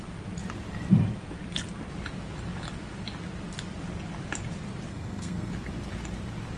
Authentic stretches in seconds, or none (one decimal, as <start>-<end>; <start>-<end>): 0.0-4.9; 5.5-6.6